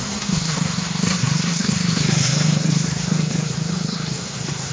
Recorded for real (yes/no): no